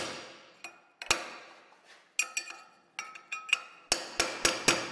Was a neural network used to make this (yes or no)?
no